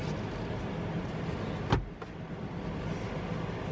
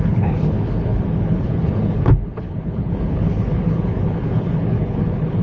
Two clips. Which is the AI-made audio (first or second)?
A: second